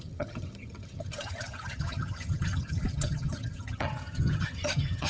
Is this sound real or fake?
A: fake